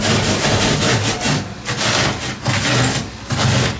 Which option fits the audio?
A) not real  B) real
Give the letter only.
B